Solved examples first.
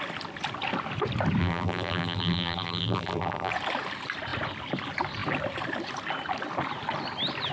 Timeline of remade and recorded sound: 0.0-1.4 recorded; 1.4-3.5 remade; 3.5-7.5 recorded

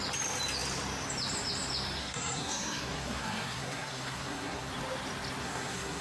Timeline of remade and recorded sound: 0.0-2.0 recorded; 2.0-4.7 remade; 4.7-5.4 recorded; 5.4-6.0 remade

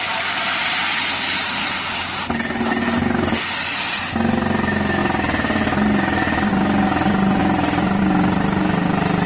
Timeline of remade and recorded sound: 0.0-9.3 recorded

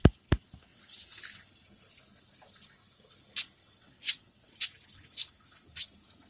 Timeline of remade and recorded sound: 0.0-0.7 recorded; 0.7-1.2 remade; 1.2-3.6 recorded; 3.6-4.5 remade; 4.5-6.3 recorded

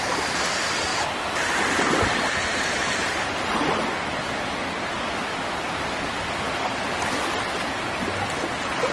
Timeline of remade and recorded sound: 0.0-8.9 recorded

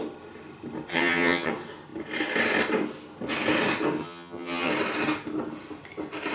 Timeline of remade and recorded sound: 0.0-0.9 recorded; 0.9-1.5 remade; 1.5-4.0 recorded; 4.0-4.7 remade; 4.7-6.3 recorded

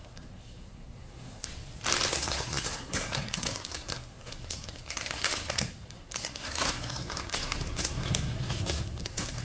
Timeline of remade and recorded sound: 0.0-1.5 remade; 1.5-2.1 recorded; 2.1-9.4 remade